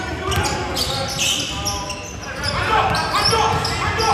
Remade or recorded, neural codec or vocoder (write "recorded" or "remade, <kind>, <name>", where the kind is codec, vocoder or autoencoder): recorded